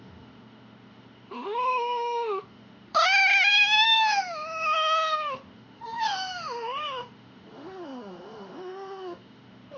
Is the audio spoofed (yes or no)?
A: yes